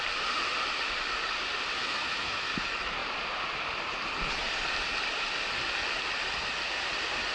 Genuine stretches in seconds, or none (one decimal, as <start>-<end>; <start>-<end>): 0.0-1.8; 2.5-7.3